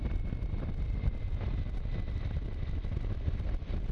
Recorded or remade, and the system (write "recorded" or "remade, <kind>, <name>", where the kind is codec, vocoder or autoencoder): recorded